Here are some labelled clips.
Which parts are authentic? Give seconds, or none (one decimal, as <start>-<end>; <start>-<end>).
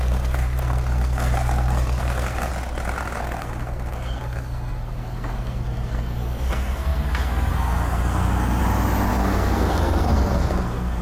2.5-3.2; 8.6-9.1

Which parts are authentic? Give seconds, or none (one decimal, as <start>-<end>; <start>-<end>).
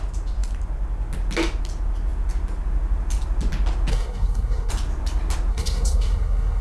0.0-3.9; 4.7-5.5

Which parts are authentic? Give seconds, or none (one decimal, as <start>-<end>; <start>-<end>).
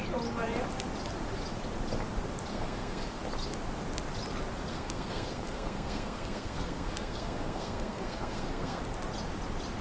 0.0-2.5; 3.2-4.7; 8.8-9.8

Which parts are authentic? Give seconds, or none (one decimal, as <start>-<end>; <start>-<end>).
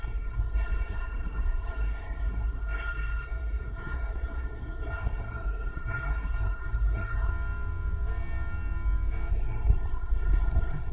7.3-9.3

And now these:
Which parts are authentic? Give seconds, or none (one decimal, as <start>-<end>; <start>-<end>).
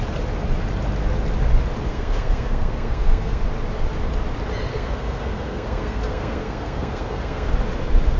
0.0-1.9; 3.4-4.7; 7.5-8.2